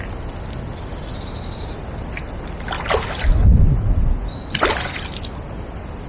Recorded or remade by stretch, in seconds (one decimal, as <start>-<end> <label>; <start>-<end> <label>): 0.0-6.1 recorded